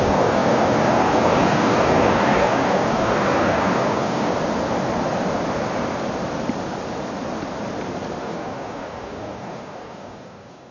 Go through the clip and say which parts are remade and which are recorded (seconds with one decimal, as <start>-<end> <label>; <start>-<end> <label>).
0.0-4.3 remade; 4.3-8.2 recorded; 8.2-10.7 remade